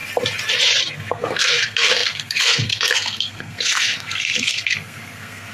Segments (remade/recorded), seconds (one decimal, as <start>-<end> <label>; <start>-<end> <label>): 0.0-1.1 recorded; 1.1-5.5 remade